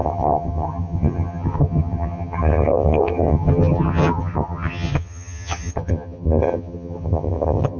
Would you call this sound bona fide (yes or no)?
no